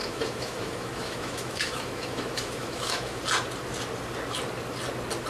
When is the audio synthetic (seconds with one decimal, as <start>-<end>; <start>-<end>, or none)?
0.0-3.2